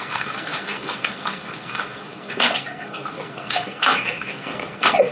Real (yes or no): no